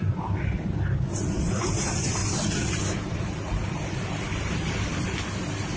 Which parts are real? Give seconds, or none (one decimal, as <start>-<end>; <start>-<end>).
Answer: 0.0-5.8